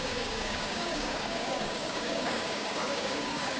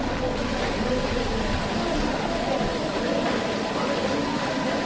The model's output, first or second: first